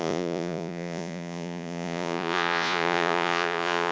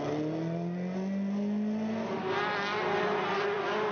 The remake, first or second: first